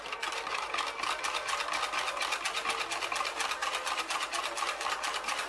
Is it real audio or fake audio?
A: real